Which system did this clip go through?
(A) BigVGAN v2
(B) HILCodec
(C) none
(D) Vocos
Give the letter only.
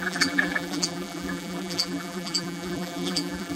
A